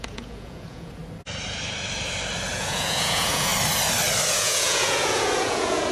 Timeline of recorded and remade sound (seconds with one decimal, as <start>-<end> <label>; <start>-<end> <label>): 0.0-1.0 remade; 1.0-2.5 recorded; 2.5-3.5 remade; 3.5-4.3 recorded; 4.3-5.9 remade